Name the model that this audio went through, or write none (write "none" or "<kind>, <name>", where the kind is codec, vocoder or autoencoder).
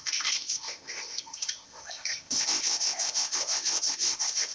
codec, ZipCodec